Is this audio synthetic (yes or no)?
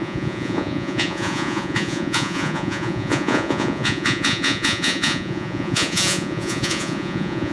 yes